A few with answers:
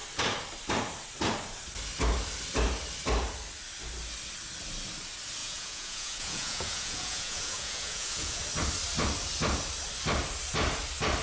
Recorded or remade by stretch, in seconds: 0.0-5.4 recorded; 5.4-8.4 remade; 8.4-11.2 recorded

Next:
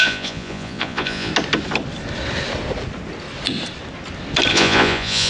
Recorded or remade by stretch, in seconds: 0.0-1.3 remade; 1.3-4.5 recorded; 4.5-5.3 remade

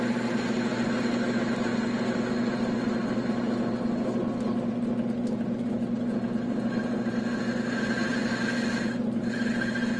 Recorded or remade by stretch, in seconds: 0.0-10.0 recorded

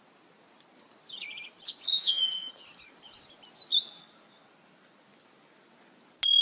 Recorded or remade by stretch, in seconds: 0.0-1.9 recorded; 1.9-2.5 remade; 2.5-6.4 recorded

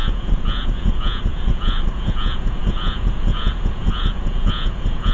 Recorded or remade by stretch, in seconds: 0.0-5.1 remade

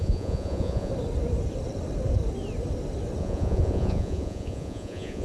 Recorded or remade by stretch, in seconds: 0.0-0.9 remade; 0.9-3.2 recorded; 3.2-5.2 remade

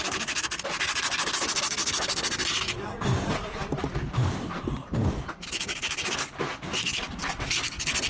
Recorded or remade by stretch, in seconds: 0.0-8.1 recorded

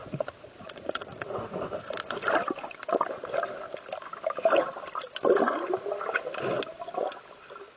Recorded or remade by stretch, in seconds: 0.0-1.7 remade; 1.7-7.8 recorded